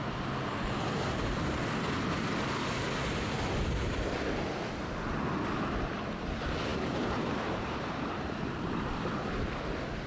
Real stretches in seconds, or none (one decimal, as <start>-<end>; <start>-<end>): 0.0-6.7; 9.1-10.1